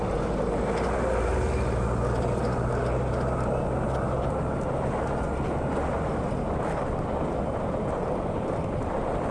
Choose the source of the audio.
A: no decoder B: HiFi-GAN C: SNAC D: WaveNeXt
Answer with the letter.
A